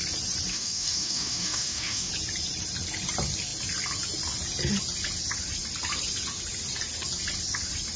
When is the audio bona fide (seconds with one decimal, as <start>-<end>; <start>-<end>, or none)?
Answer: 0.0-0.5; 2.1-8.0